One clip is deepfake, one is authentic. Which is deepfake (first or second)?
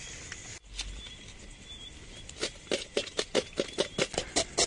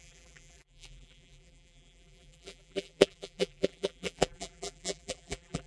second